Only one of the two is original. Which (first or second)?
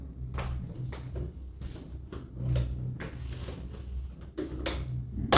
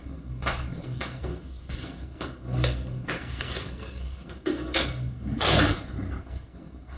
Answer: first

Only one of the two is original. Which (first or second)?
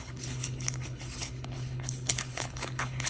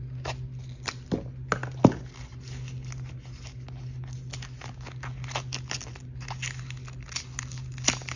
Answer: second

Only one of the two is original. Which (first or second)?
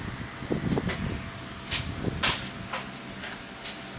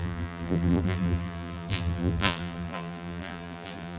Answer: first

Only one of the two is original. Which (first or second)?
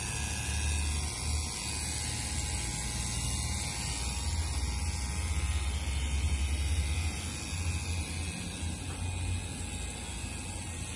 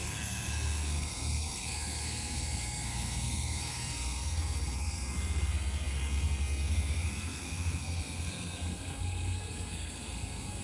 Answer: first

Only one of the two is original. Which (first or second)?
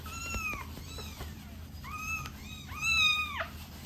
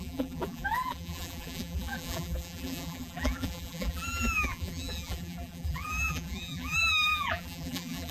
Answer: first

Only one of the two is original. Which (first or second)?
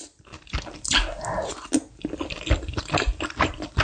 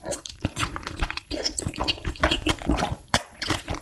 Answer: first